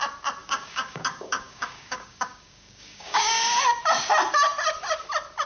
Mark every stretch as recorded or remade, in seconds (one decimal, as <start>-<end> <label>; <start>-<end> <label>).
0.0-0.4 recorded; 0.4-3.6 remade; 3.6-5.5 recorded